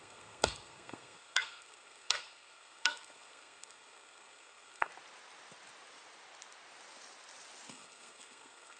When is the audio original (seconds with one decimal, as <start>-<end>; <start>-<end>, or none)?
4.9-7.7